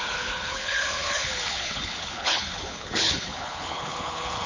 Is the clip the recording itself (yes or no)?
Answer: no